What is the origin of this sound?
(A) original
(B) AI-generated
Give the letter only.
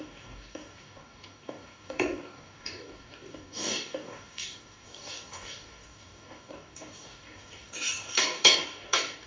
B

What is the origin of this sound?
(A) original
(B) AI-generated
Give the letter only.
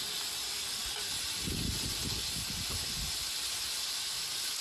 A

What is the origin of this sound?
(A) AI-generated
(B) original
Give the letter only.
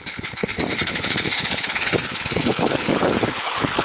A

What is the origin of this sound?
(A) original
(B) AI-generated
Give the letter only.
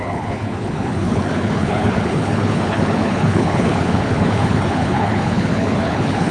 B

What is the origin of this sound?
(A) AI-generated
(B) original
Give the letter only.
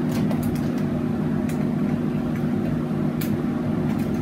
B